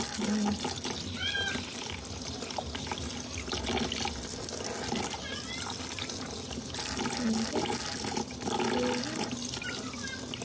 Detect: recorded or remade recorded